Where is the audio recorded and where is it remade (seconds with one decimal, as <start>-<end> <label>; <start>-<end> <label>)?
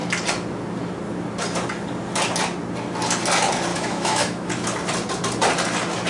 0.0-3.7 recorded; 3.7-4.5 remade; 4.5-6.1 recorded